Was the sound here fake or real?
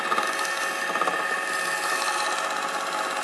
real